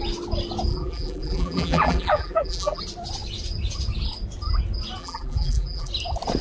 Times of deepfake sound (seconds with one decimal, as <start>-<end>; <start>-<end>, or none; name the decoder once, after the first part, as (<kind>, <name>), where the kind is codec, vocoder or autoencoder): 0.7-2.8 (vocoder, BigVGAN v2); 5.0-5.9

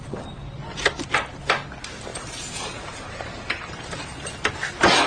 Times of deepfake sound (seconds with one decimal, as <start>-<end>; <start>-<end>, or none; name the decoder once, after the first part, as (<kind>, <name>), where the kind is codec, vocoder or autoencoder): 2.1-4.0 (vocoder, BigVGAN v2)

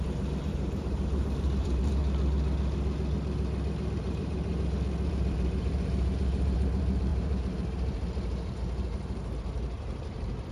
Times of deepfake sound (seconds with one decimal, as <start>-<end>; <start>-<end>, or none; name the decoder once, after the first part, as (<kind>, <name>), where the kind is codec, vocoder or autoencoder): 0.0-2.0 (vocoder, BigVGAN v2); 3.8-4.5; 5.1-10.5

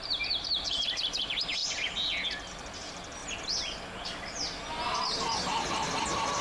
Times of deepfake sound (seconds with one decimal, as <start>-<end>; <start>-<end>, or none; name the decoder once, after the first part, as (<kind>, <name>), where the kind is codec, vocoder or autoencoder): 0.0-1.6 (vocoder, BigVGAN v2); 2.5-3.2; 5.0-6.4

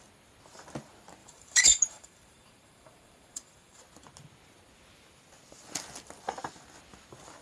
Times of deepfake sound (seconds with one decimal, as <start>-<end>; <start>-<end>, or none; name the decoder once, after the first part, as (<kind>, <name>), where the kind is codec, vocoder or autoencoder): 1.2-3.8 (vocoder, BigVGAN v2)

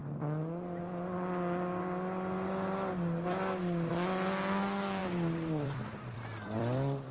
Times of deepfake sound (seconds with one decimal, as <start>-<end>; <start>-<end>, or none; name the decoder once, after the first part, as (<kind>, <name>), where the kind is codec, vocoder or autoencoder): 5.0-7.1 (vocoder, BigVGAN v2)

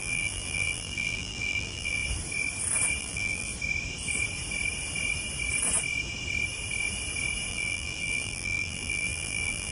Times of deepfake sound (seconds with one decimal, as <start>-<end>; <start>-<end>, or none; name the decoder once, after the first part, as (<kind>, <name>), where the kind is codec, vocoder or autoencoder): 0.0-2.0 (vocoder, BigVGAN v2); 3.0-3.5; 7.5-9.7

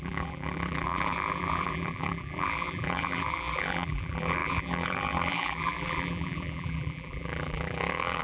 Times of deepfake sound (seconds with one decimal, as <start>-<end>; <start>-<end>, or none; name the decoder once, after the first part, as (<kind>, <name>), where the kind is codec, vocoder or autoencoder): 0.0-8.2 (vocoder, BigVGAN v2)